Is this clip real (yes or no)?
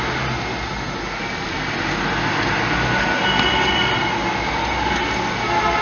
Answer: yes